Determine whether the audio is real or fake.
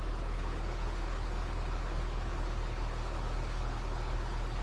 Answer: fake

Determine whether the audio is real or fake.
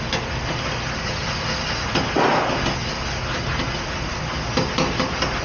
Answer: real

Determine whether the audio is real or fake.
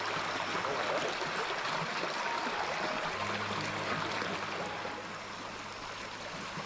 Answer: real